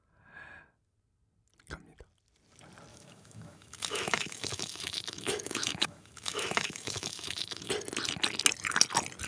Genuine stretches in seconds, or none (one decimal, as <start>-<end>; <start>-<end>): 0.0-2.9; 7.7-9.3